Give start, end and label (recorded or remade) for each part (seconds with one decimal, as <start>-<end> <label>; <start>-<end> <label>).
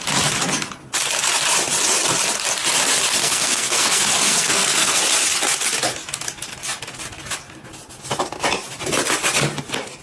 0.0-3.2 recorded; 3.2-5.0 remade; 5.0-10.0 recorded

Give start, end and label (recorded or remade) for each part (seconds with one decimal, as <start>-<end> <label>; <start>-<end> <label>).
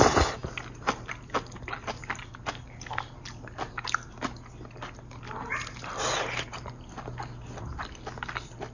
0.0-8.7 recorded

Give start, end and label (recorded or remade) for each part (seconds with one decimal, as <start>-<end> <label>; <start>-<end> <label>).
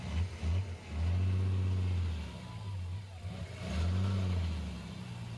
0.0-5.4 recorded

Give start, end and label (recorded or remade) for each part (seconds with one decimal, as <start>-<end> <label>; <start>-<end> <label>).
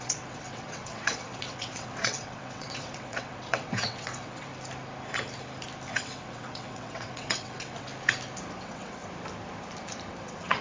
0.0-4.5 remade; 4.5-5.9 recorded; 5.9-7.9 remade; 7.9-8.6 recorded; 8.6-9.0 remade; 9.0-10.1 recorded; 10.1-10.6 remade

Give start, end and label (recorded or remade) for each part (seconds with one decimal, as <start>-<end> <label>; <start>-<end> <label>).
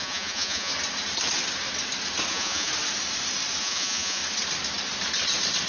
0.0-0.7 remade; 0.7-2.3 recorded; 2.3-2.7 remade; 2.7-3.6 recorded; 3.6-4.2 remade; 4.2-5.7 recorded